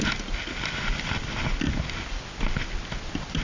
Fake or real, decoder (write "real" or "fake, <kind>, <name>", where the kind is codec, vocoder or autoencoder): real